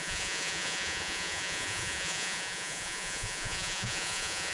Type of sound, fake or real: fake